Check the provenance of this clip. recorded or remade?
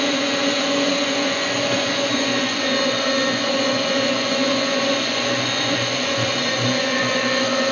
remade